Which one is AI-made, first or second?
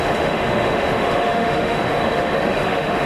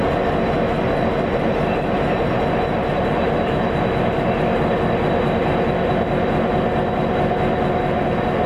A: first